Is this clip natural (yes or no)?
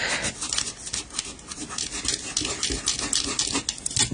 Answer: yes